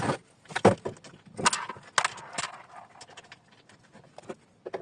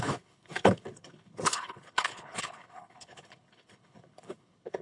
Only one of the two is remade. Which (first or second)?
second